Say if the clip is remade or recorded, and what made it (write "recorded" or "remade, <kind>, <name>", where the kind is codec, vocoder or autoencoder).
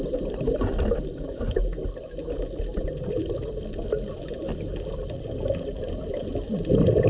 remade, vocoder, BigVGAN v2